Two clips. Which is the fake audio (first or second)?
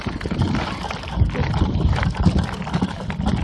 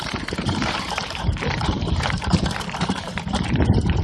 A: second